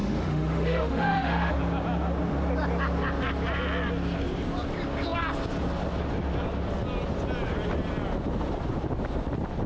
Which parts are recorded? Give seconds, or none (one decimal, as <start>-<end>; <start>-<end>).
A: 1.5-9.7